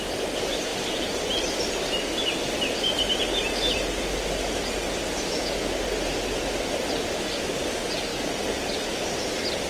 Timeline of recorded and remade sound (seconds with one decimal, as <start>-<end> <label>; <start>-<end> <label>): 0.0-9.7 recorded